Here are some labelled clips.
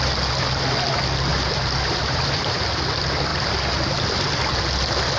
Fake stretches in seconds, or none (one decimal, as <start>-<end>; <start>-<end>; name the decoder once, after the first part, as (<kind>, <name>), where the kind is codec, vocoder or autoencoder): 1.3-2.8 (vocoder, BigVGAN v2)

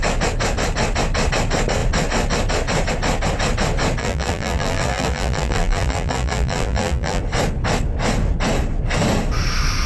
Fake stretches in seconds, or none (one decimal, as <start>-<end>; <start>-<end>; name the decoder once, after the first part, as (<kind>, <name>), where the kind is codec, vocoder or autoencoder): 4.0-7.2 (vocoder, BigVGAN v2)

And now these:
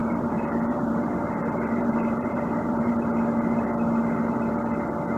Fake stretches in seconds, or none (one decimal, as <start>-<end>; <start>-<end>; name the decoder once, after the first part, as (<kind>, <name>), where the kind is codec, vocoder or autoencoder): 0.0-3.1 (vocoder, BigVGAN v2)

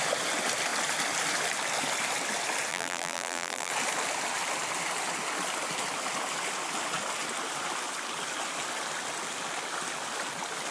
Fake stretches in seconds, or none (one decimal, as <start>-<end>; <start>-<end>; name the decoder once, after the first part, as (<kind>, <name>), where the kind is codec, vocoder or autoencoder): 2.7-3.7 (vocoder, BigVGAN v2)